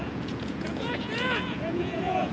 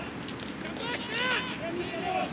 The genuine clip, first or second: second